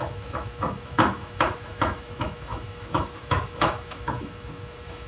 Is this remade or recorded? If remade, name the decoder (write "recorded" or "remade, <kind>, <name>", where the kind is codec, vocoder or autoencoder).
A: remade, autoencoder, DAC-VAE